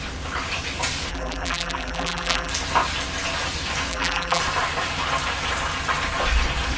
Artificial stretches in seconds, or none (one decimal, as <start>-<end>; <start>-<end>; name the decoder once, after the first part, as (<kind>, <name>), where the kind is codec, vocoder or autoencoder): 1.1-2.5 (vocoder, BigVGAN v2); 3.9-4.4